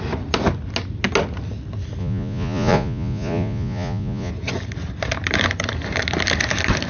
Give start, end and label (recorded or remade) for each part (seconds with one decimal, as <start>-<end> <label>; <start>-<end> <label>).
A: 0.0-2.0 recorded; 2.0-4.3 remade; 4.3-6.9 recorded